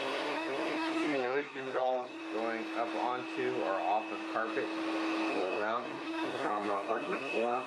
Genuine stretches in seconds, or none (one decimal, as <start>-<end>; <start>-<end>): 2.2-5.3